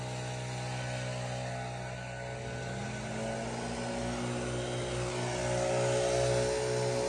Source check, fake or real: real